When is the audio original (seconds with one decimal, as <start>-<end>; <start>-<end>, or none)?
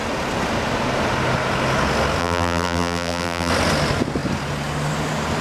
0.0-2.2; 3.5-5.4